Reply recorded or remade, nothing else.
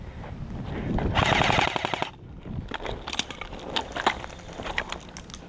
recorded